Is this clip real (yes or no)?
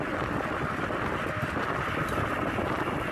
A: yes